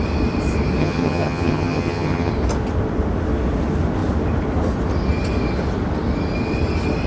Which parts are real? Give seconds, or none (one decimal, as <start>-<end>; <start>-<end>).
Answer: 0.0-0.8; 2.3-7.1